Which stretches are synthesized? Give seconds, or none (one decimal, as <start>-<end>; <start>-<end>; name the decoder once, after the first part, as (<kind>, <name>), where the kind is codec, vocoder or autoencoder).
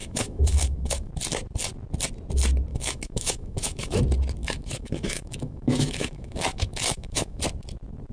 0.0-1.1 (autoencoder, DAC-VAE); 2.7-4.0; 4.4-7.4